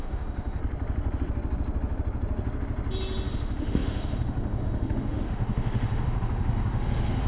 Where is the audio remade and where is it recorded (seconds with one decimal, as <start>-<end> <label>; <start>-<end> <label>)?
0.0-0.6 remade; 0.6-3.3 recorded; 3.3-7.3 remade